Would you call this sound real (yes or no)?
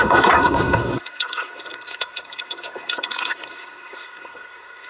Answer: no